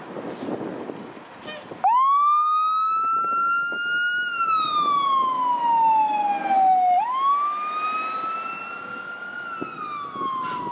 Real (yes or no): yes